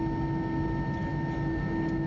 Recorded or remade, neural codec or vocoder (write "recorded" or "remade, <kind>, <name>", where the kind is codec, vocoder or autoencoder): recorded